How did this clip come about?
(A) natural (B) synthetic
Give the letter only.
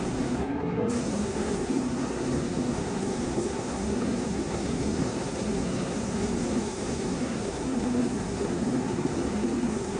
B